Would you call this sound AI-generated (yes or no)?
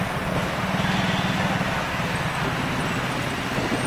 no